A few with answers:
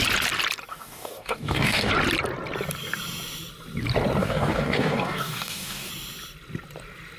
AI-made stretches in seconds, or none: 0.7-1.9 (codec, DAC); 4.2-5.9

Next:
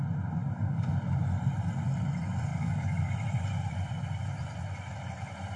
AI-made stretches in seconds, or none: 0.4-0.9 (codec, DAC); 2.5-3.1

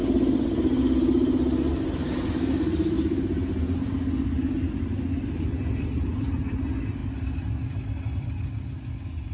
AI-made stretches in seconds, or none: none

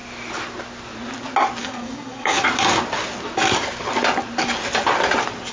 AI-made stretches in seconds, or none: 1.6-2.4 (codec, DAC)